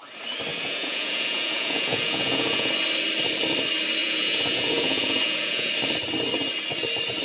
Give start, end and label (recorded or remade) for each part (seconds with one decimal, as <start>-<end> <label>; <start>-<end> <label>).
0.0-0.5 recorded; 0.5-2.7 remade; 2.7-4.0 recorded; 4.0-5.7 remade; 5.7-7.2 recorded